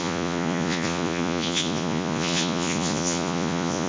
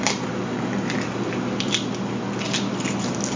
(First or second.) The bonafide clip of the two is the second